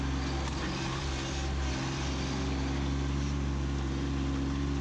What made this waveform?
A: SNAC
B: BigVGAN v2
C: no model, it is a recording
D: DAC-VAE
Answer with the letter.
C